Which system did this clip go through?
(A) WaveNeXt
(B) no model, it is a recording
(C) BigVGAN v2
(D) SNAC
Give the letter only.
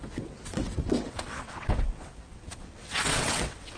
A